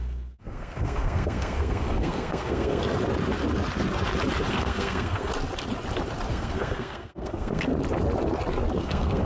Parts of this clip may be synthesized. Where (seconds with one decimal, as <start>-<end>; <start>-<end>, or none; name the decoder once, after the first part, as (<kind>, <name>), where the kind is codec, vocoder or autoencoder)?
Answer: 0.0-2.8 (codec, SNAC); 4.5-5.3; 6.3-7.7; 8.8-9.3